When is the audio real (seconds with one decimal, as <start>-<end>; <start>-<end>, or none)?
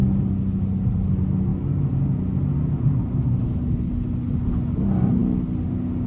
0.0-6.1